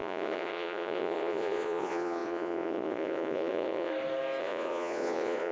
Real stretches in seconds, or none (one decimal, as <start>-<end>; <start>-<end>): 3.9-4.4